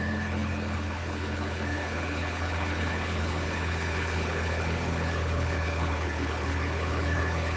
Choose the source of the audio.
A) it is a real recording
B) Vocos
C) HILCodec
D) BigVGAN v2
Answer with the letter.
C